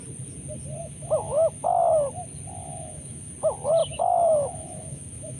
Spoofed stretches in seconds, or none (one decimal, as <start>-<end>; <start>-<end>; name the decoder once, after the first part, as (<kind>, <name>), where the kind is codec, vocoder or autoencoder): 0.8-1.8 (autoencoder, DAC-VAE); 2.6-3.3; 3.8-5.4